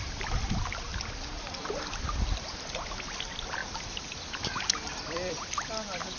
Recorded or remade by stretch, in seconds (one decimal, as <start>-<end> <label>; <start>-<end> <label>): 0.0-0.9 recorded; 0.9-2.9 remade; 2.9-3.6 recorded; 3.6-5.3 remade; 5.3-6.2 recorded